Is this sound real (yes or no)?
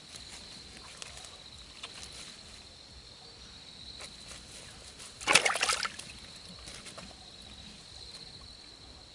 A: yes